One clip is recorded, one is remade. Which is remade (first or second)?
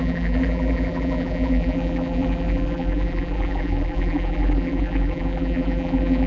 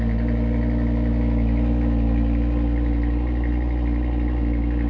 first